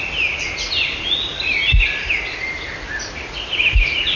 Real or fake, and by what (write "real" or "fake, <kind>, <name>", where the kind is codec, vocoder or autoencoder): real